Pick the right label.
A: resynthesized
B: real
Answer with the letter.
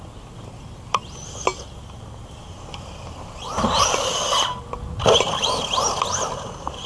B